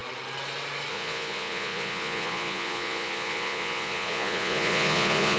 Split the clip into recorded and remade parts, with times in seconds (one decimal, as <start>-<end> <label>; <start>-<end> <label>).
0.0-0.9 recorded; 0.9-5.4 remade